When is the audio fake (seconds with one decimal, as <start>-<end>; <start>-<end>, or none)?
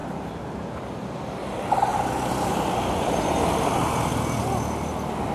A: 1.9-4.1